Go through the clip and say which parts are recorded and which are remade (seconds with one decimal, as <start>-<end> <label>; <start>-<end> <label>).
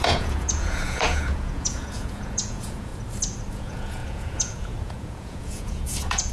0.0-2.9 remade; 2.9-3.5 recorded; 3.5-6.3 remade